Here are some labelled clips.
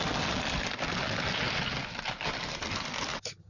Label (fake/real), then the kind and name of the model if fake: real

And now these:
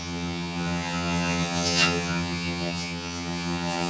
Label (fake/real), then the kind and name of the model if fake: fake, vocoder, HiFi-GAN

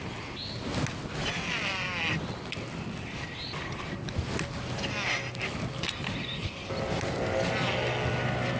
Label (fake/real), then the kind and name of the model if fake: real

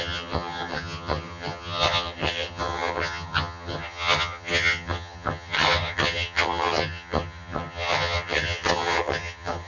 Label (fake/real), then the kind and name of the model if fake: fake, vocoder, HiFi-GAN